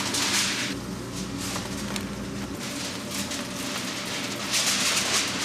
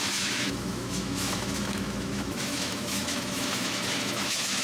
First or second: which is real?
first